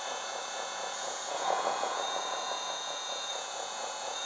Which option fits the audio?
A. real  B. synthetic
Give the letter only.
B